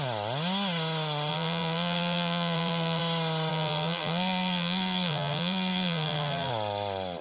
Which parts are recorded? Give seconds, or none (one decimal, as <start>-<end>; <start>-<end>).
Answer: 0.0-1.3; 3.0-3.5; 6.5-7.2